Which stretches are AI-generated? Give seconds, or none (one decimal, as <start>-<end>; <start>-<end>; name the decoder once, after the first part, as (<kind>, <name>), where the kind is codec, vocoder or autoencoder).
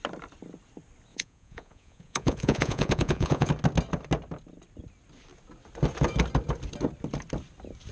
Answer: 1.1-3.5 (vocoder, Vocos)